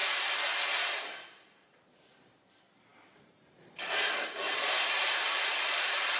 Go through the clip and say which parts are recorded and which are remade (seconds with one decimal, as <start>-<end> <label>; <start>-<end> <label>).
0.0-6.2 remade